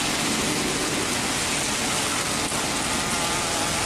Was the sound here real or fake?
real